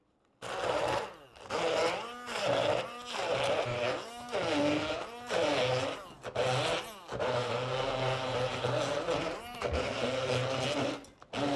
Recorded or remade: recorded